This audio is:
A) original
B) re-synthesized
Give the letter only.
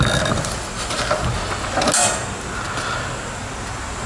A